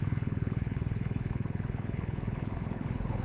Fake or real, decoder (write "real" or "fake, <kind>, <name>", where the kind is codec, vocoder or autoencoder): fake, codec, HILCodec